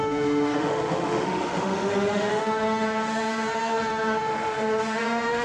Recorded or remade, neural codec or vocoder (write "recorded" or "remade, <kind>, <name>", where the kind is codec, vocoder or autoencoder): remade, autoencoder, DAC-VAE